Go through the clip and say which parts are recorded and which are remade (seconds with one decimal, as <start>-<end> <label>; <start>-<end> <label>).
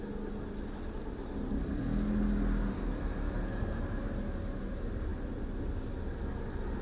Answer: 0.0-2.6 recorded; 2.6-3.8 remade; 3.8-6.8 recorded